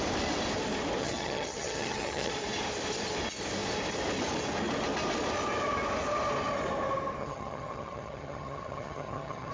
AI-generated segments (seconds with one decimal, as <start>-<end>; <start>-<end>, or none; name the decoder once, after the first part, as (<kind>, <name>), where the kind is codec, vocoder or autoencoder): 1.0-2.3 (vocoder, HiFi-GAN); 7.2-9.5